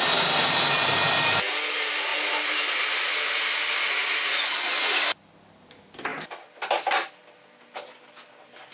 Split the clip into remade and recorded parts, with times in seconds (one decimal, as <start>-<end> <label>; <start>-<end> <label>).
0.0-8.7 recorded